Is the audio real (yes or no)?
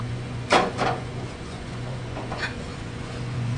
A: no